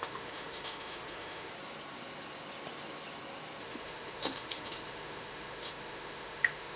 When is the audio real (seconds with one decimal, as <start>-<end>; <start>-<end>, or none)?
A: 1.5-3.6